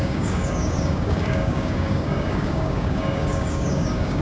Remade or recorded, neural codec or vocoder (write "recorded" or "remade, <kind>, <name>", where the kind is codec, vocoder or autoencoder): remade, codec, DAC